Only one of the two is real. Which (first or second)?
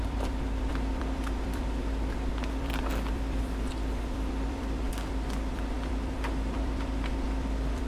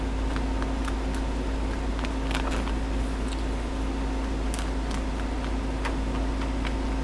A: second